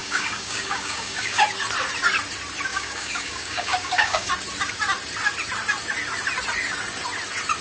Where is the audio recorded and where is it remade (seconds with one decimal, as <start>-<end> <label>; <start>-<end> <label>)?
0.0-1.4 remade; 1.4-2.7 recorded; 2.7-4.3 remade; 4.3-7.6 recorded